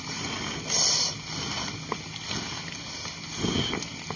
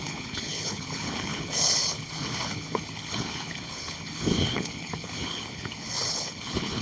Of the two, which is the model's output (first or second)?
second